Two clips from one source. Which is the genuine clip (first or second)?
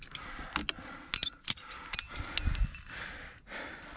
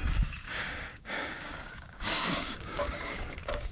first